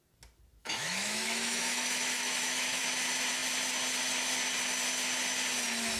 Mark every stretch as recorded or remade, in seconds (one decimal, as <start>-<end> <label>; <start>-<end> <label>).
0.0-0.6 recorded; 0.6-2.8 remade; 2.8-6.0 recorded